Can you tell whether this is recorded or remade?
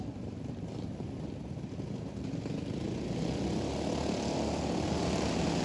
recorded